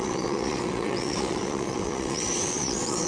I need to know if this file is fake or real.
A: fake